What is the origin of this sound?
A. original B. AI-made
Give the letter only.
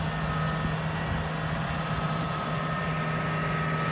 A